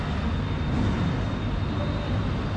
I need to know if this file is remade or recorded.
recorded